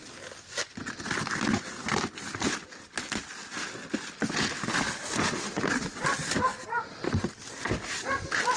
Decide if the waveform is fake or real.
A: real